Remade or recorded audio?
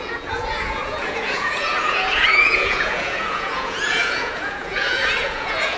remade